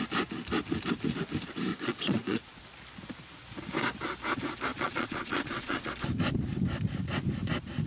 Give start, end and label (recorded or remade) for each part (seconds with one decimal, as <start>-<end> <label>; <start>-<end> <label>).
0.0-1.7 recorded; 1.7-2.6 remade; 2.6-4.7 recorded; 4.7-5.9 remade; 5.9-7.9 recorded